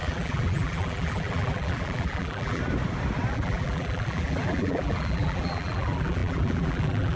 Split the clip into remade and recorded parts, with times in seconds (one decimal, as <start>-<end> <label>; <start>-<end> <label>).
0.0-2.6 remade; 2.6-3.3 recorded; 3.3-7.2 remade